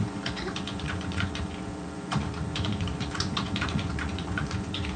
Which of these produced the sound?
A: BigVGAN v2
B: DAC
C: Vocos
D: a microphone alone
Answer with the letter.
C